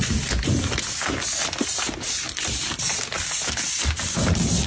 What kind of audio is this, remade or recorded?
recorded